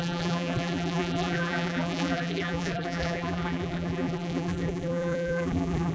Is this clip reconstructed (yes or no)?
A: yes